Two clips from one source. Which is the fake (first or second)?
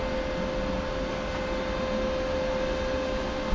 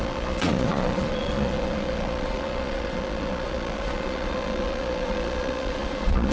second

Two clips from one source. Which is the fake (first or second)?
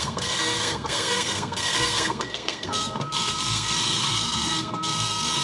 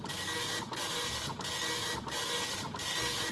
first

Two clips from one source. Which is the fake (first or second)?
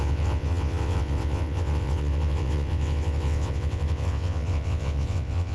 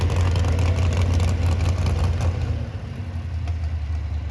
first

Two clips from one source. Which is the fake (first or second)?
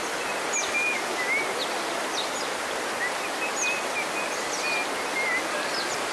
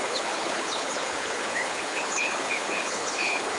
second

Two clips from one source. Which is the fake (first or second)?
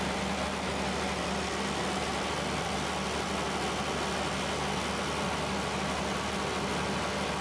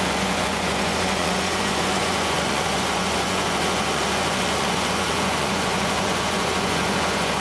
second